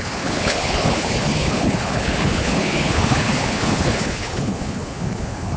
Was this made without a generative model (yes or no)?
no